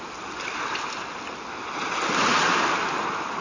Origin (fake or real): real